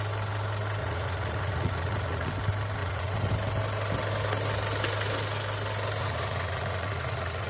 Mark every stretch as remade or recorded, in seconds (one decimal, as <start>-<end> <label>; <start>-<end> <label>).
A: 0.0-0.8 recorded; 0.8-2.3 remade; 2.3-2.8 recorded; 2.8-3.3 remade; 3.3-6.0 recorded; 6.0-7.5 remade